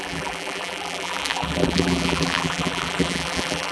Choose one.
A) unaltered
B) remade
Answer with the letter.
B